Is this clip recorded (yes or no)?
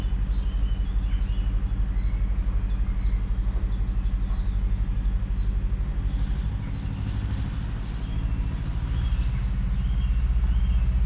yes